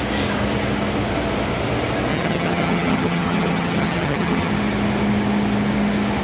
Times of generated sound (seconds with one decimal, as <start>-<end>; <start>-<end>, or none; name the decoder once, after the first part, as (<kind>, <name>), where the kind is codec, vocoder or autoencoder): 2.1-4.5 (vocoder, HiFi-GAN)